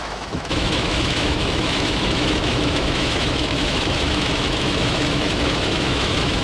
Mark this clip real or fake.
fake